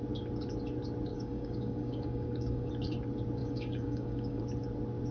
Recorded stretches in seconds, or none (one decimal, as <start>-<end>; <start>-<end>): 0.0-1.1; 2.7-3.4; 4.4-5.1